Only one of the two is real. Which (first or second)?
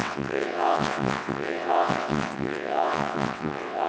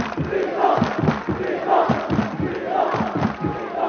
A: second